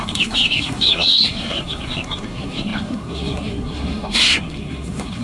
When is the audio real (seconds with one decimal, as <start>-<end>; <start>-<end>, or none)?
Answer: none